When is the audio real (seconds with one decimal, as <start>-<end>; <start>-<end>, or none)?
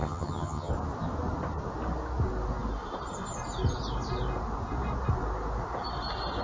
0.7-6.4